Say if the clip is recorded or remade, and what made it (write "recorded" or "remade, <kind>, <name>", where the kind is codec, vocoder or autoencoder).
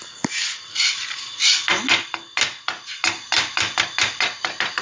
recorded